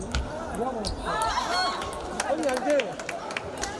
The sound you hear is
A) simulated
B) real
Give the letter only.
B